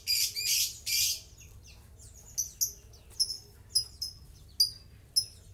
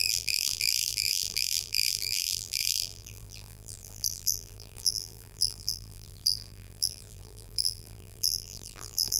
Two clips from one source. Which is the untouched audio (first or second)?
first